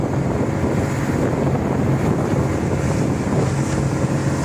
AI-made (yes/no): no